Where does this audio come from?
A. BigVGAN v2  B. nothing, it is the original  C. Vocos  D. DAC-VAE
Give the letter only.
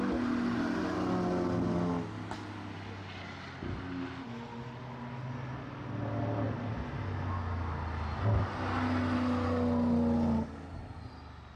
B